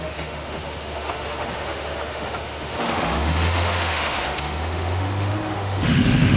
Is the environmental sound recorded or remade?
remade